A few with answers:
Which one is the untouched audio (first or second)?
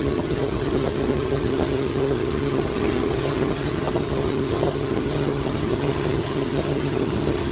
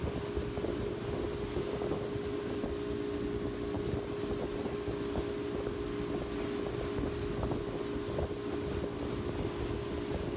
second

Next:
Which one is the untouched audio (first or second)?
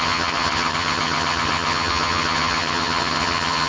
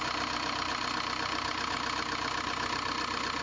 second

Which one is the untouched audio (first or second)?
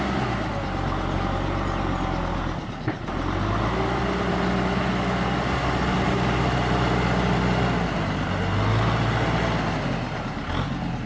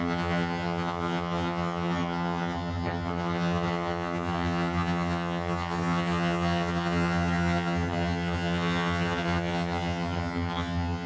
first